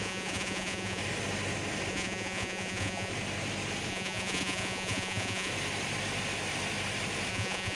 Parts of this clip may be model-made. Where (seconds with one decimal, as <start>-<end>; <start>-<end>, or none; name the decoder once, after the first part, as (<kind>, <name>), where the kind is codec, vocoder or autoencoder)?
0.0-1.0 (vocoder, Vocos); 1.9-3.1; 3.9-5.5; 7.3-7.7